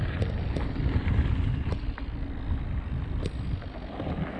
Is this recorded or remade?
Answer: recorded